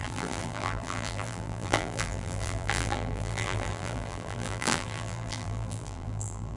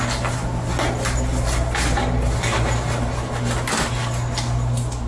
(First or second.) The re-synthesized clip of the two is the first